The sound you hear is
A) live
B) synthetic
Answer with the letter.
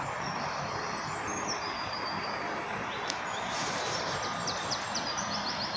B